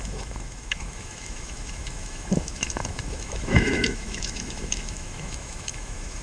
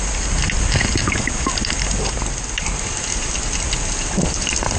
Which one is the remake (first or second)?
first